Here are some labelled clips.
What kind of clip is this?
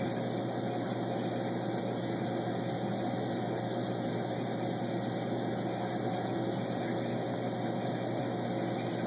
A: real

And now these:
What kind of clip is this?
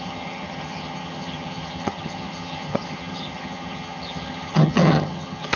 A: fake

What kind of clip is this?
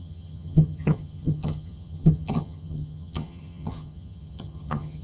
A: fake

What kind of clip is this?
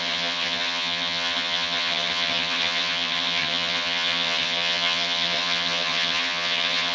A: fake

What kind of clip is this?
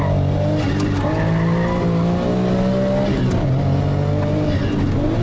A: real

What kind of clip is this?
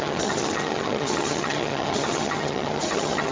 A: fake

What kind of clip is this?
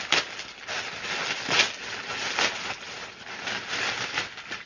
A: real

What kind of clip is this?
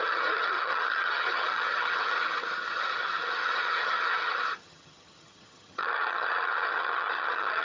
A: fake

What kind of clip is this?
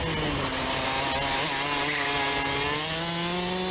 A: real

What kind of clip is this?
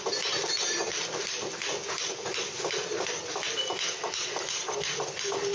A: real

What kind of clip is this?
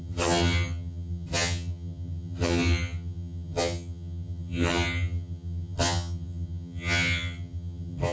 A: fake